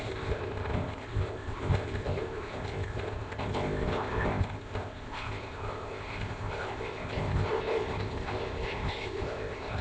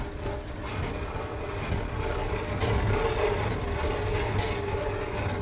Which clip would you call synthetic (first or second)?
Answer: first